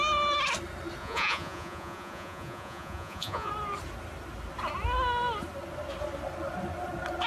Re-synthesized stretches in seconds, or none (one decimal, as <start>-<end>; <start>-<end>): 1.0-3.5